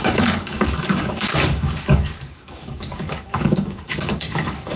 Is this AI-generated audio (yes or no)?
yes